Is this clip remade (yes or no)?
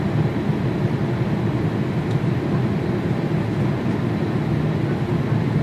no